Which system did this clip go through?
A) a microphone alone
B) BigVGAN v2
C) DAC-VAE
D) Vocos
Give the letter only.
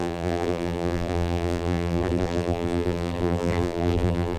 B